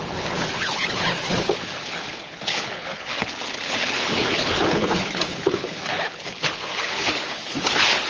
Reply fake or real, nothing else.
fake